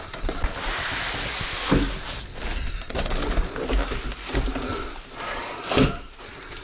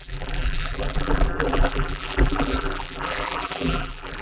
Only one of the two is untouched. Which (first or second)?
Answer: first